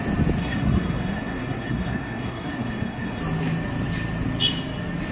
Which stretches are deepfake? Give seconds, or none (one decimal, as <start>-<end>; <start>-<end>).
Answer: 0.4-3.2